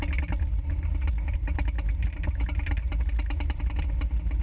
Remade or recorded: recorded